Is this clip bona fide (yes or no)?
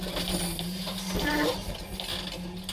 yes